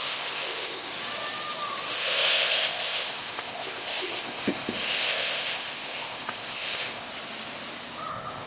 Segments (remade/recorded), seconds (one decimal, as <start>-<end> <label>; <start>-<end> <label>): 0.0-0.9 remade; 0.9-2.0 recorded; 2.0-7.1 remade; 7.1-8.1 recorded; 8.1-8.5 remade